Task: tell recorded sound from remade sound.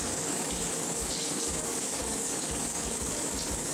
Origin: remade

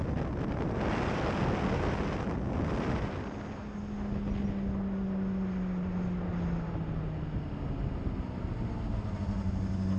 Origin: recorded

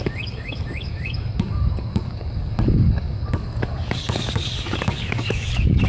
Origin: remade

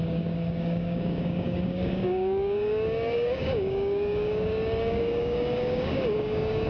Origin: remade